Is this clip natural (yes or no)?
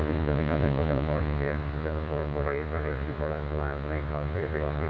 no